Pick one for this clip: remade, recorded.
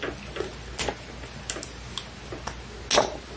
recorded